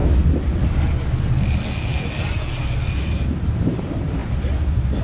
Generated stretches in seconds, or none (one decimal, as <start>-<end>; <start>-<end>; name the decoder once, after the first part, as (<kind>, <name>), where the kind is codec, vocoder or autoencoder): 3.0-5.0 (vocoder, BigVGAN v2)